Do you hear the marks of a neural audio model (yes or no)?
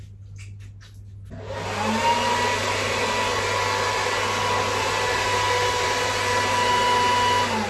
no